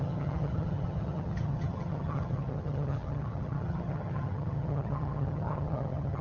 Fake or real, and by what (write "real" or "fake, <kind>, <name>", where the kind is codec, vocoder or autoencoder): fake, vocoder, HiFi-GAN